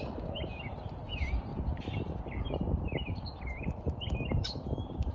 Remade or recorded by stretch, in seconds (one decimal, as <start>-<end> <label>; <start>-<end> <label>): 0.0-1.5 remade; 1.5-2.2 recorded; 2.2-5.1 remade